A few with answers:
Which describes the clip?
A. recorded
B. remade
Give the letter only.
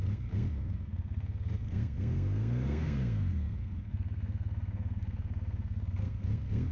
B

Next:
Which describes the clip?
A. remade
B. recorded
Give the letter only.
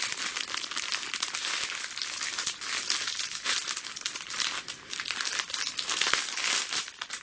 B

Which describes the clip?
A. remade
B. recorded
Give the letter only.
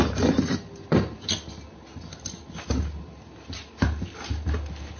B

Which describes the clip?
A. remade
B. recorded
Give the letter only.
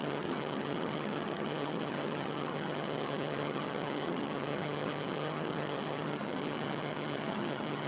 A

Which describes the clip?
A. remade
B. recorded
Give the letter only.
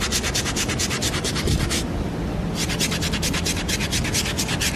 B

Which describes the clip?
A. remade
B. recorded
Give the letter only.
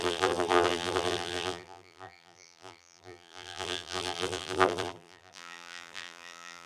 A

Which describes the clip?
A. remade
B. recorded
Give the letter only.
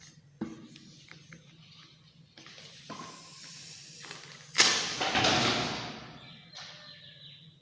B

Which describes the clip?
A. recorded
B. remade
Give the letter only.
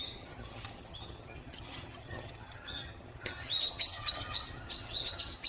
B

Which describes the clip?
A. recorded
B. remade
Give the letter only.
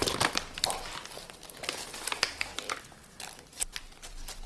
A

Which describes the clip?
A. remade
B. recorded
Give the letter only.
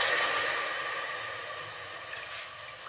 B